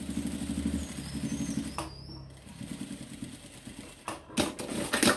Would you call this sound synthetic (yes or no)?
no